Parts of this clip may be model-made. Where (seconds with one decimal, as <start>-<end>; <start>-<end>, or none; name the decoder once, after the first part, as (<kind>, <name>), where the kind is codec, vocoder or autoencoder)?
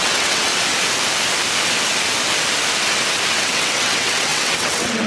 0.0-0.5 (vocoder, WaveNeXt); 3.3-5.1